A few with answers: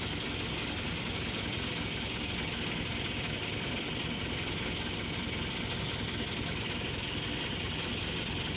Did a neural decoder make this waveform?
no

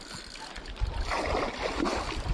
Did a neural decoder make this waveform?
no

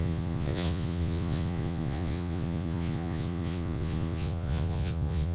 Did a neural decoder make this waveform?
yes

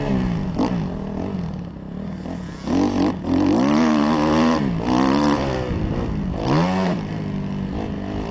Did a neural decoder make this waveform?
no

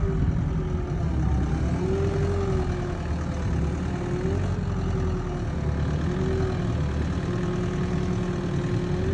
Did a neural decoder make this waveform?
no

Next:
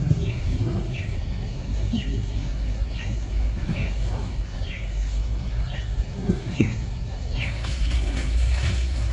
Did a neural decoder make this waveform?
yes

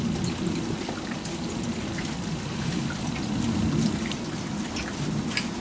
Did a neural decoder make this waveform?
no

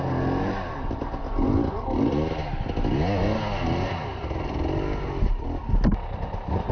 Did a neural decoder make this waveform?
no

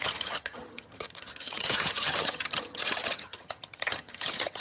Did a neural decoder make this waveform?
yes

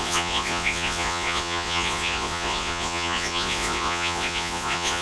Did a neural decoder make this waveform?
yes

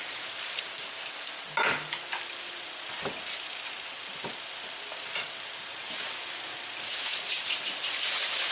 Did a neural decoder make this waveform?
no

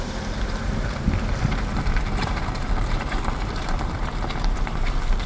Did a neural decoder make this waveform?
yes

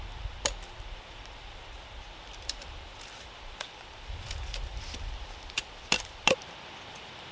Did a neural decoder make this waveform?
yes